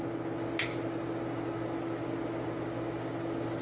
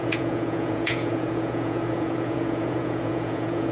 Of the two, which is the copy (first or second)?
second